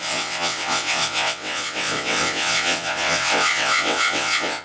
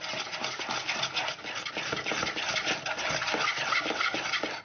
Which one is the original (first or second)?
second